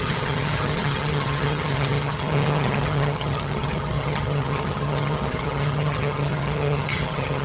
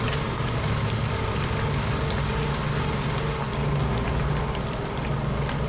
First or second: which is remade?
first